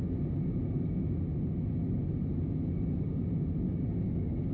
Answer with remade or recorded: recorded